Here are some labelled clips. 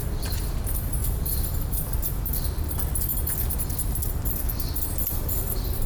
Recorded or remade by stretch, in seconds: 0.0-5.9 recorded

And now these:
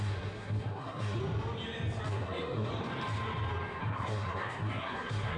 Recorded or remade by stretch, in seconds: 0.0-1.2 remade; 1.2-2.1 recorded; 2.1-2.7 remade; 2.7-3.8 recorded; 3.8-5.4 remade

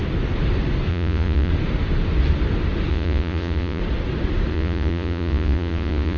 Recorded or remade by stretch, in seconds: 0.0-0.9 recorded; 0.9-1.5 remade; 1.5-2.9 recorded; 2.9-3.8 remade; 3.8-4.5 recorded; 4.5-6.2 remade

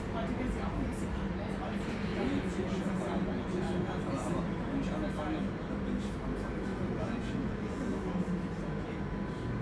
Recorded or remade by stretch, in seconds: 0.0-2.1 recorded; 2.1-3.6 remade; 3.6-6.7 recorded; 6.7-7.8 remade; 7.8-9.6 recorded

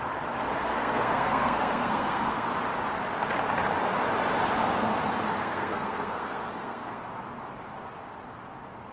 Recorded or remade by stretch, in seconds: 0.0-0.6 recorded; 0.6-2.5 remade; 2.5-5.4 recorded; 5.4-7.0 remade; 7.0-8.9 recorded

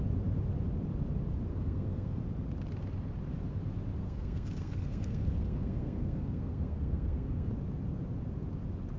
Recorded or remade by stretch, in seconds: 0.0-1.5 recorded; 1.5-2.2 remade; 2.2-4.0 recorded; 4.0-7.5 remade; 7.5-9.0 recorded

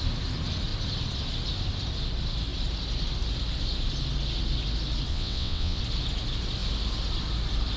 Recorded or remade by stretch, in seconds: 0.0-5.1 recorded; 5.1-5.8 remade; 5.8-7.8 recorded